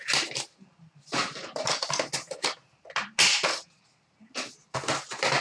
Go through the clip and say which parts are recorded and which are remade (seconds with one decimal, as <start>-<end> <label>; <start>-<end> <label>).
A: 0.0-5.4 recorded